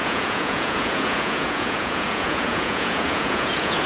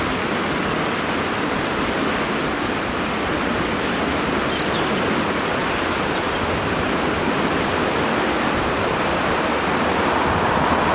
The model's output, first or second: first